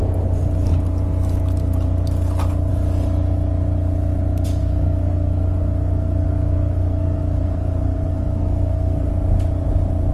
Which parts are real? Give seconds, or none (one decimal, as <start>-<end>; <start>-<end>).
0.0-4.6; 9.1-10.1